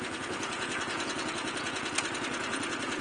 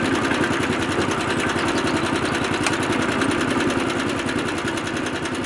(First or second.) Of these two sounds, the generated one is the first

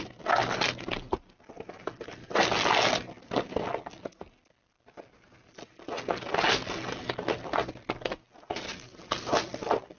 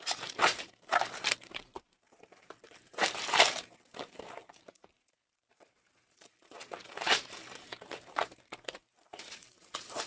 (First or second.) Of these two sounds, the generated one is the second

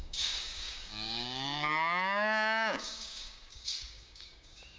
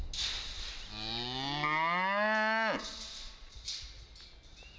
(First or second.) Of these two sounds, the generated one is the first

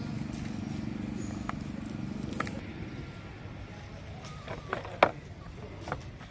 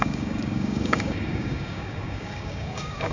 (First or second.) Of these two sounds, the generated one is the second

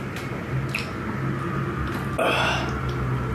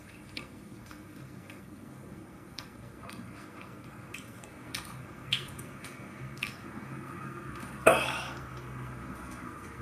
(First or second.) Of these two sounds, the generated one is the second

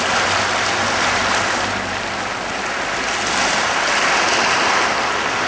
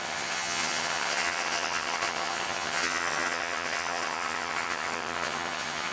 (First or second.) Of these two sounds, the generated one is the second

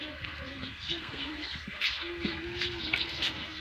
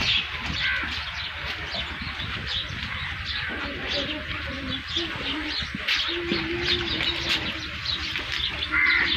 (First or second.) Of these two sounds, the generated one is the first